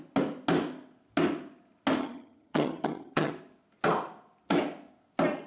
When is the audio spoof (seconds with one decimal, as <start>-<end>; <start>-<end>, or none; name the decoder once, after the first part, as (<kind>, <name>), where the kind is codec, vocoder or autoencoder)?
2.0-3.3 (vocoder, HiFi-GAN)